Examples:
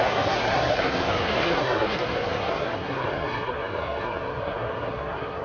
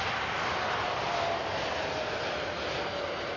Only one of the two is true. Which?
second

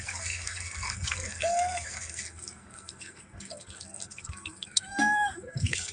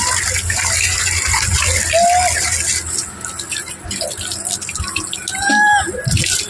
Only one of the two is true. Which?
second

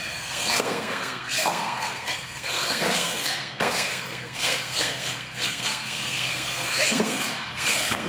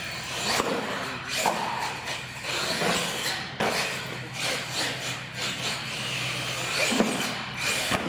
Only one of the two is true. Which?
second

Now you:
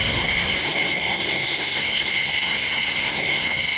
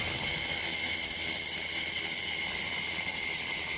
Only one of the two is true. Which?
second